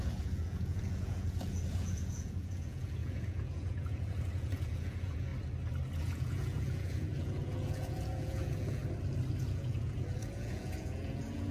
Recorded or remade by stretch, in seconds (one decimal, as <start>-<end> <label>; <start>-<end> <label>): 0.0-5.3 remade; 5.3-6.0 recorded; 6.0-8.8 remade; 8.8-9.4 recorded; 9.4-11.5 remade